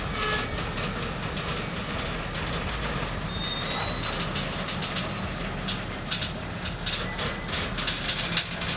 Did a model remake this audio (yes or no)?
no